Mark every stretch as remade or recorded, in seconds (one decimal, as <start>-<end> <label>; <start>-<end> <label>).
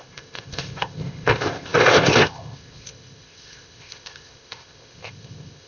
0.0-5.7 remade